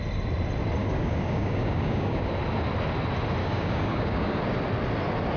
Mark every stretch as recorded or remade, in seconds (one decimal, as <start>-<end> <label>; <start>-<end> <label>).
0.0-0.8 recorded; 0.8-2.3 remade; 2.3-3.4 recorded; 3.4-4.4 remade; 4.4-5.4 recorded

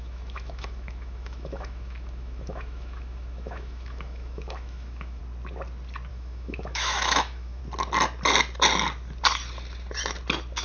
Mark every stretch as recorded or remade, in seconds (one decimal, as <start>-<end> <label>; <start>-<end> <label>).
0.0-5.2 remade; 5.2-6.1 recorded; 6.1-7.6 remade; 7.6-10.6 recorded

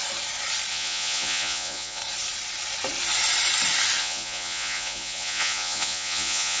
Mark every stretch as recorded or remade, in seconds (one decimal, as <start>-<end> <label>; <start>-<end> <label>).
0.0-0.7 recorded; 0.7-2.0 remade; 2.0-4.0 recorded; 4.0-6.6 remade